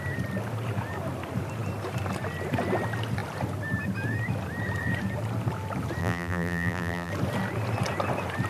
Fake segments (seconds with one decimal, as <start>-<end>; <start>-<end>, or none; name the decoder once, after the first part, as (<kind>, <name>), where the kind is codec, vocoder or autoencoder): 6.0-7.1 (vocoder, BigVGAN v2)